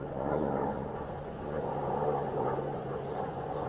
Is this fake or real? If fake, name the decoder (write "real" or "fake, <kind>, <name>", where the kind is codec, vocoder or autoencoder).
fake, vocoder, Vocos